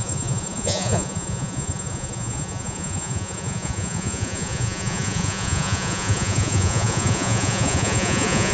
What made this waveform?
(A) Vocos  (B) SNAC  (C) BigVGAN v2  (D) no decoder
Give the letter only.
A